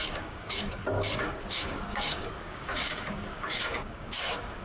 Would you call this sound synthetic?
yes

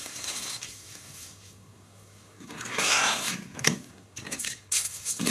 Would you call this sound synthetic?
yes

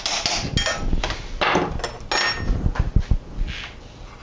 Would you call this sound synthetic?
no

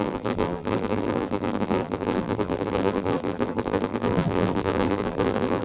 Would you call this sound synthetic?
yes